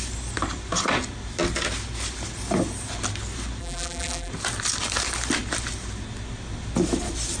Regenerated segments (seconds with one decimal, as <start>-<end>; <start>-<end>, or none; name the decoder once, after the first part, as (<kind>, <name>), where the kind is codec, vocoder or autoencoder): 3.6-4.3 (vocoder, BigVGAN v2)